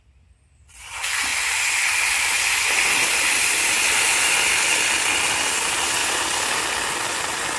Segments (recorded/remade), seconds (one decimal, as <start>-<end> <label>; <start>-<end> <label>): 0.0-7.6 recorded